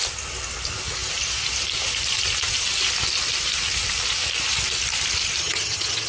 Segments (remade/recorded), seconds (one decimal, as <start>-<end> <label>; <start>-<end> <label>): 0.0-5.4 recorded; 5.4-6.1 remade